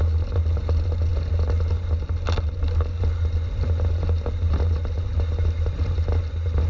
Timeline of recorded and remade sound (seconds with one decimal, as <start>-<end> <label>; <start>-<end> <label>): 0.0-6.7 recorded